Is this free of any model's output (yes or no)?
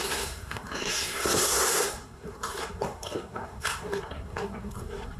no